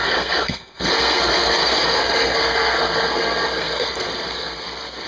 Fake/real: fake